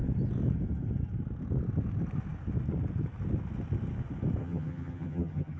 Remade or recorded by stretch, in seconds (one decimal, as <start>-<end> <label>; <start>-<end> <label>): 0.0-4.4 recorded; 4.4-5.6 remade